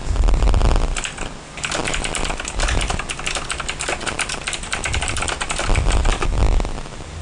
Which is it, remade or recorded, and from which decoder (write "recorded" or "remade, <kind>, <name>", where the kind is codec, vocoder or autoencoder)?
recorded